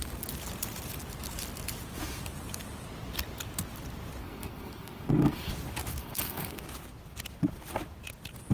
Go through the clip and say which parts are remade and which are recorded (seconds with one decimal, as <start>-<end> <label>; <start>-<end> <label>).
0.0-4.2 recorded; 4.2-5.5 remade; 5.5-6.0 recorded; 6.0-6.6 remade; 6.6-8.5 recorded